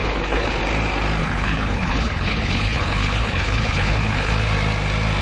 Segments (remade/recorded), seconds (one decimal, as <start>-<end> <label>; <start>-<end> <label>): 0.0-0.6 remade; 0.6-1.2 recorded; 1.2-4.3 remade; 4.3-5.2 recorded